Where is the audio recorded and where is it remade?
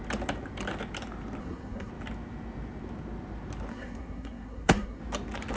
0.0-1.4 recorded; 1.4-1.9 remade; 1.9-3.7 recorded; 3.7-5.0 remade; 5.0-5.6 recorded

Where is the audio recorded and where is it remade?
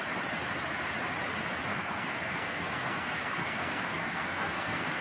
0.0-1.7 recorded; 1.7-5.0 remade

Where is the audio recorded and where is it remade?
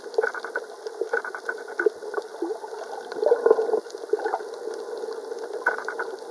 0.0-6.3 recorded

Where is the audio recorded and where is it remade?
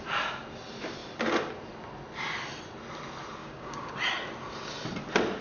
0.0-3.4 recorded; 3.4-3.9 remade; 3.9-5.4 recorded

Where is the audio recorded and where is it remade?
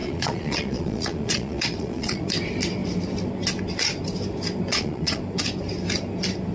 0.0-2.3 remade; 2.3-4.7 recorded; 4.7-5.2 remade; 5.2-6.5 recorded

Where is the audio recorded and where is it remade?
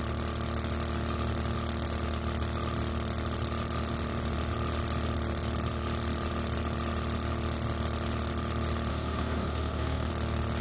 0.0-8.9 recorded; 8.9-10.1 remade; 10.1-10.6 recorded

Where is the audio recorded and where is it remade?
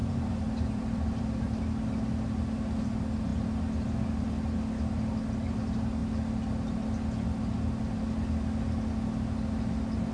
0.0-1.2 remade; 1.2-10.1 recorded